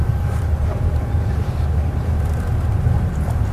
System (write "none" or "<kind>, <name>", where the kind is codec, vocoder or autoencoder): vocoder, BigVGAN v2